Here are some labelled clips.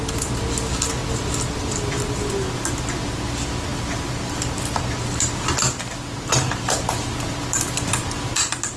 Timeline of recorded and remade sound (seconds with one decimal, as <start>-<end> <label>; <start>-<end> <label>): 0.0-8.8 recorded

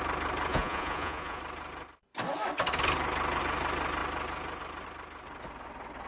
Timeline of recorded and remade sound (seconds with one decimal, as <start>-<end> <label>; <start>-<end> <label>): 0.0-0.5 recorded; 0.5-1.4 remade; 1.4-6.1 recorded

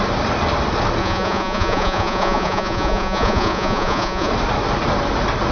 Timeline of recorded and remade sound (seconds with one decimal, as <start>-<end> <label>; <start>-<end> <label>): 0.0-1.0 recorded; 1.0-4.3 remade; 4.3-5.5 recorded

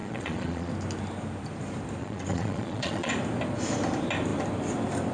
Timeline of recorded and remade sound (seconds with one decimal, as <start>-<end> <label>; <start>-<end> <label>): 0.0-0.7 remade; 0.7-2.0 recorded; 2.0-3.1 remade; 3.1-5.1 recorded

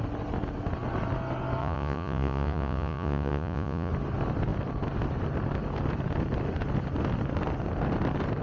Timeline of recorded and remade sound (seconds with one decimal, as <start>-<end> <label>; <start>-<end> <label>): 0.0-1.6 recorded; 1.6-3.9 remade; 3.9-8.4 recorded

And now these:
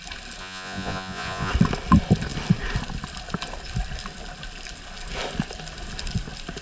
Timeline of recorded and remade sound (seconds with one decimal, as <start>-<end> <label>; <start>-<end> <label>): 0.0-0.4 recorded; 0.4-1.5 remade; 1.5-6.6 recorded